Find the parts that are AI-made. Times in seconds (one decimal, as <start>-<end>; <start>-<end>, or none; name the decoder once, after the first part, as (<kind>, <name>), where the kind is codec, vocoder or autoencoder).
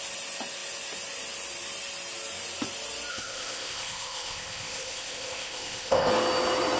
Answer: 3.1-6.1 (codec, ZipCodec)